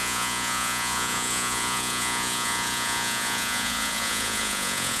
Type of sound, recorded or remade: remade